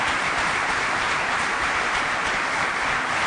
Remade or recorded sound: remade